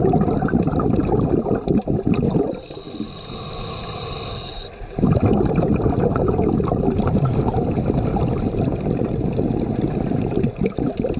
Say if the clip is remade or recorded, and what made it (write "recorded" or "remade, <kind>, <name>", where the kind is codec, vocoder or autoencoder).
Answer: recorded